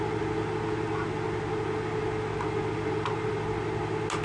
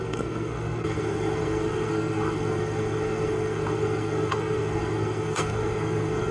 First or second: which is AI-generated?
second